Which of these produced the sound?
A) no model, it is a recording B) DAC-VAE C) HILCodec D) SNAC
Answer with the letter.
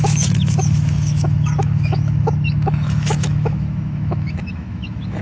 B